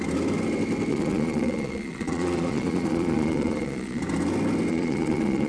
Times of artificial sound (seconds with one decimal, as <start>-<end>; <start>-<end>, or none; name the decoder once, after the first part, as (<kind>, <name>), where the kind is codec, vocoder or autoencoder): 0.9-4.0 (vocoder, Vocos); 4.7-5.5